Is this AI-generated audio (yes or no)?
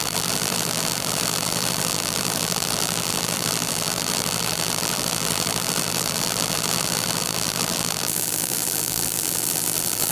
yes